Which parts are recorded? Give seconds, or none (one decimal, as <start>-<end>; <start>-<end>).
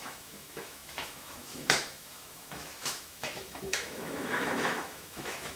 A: none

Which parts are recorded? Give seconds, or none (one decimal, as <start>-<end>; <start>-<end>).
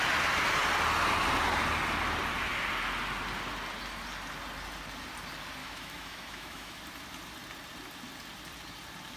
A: 0.0-5.6; 6.8-9.2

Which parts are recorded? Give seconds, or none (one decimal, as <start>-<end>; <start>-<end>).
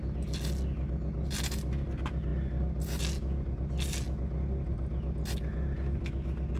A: 0.0-6.6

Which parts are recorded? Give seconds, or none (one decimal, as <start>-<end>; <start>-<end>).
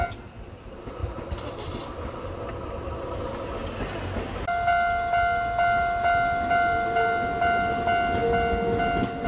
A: 0.0-9.3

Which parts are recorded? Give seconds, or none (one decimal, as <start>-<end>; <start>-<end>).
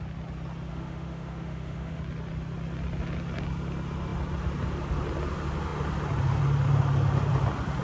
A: 0.0-0.7; 2.0-7.8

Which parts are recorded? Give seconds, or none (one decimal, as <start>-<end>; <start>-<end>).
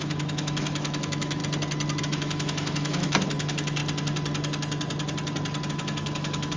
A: 1.4-2.0; 3.8-5.7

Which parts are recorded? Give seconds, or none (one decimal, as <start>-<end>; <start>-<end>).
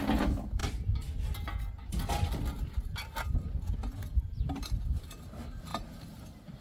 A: 0.0-6.6